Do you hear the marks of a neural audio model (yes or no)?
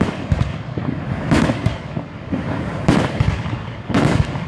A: yes